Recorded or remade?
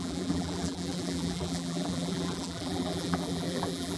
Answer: remade